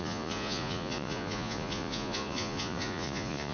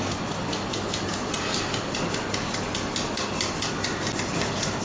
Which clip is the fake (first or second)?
first